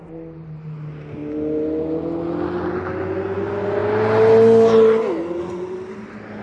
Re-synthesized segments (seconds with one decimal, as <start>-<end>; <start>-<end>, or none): none